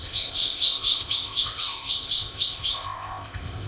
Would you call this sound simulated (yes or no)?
yes